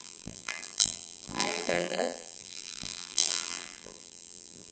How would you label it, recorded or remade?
remade